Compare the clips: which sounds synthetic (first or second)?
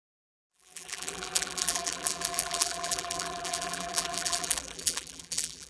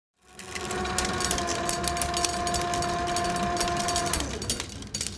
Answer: first